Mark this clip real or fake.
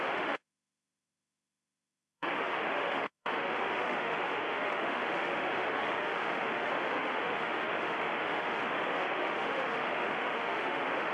fake